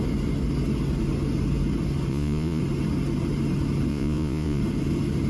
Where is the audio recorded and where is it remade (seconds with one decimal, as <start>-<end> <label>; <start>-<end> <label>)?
0.0-2.1 recorded; 2.1-2.6 remade; 2.6-3.9 recorded; 3.9-4.6 remade; 4.6-5.3 recorded